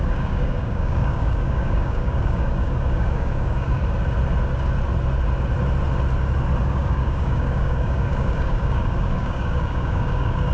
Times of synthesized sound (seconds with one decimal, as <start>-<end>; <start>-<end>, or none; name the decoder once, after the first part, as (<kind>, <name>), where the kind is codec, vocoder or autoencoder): 0.0-3.8 (codec, DAC); 6.6-10.5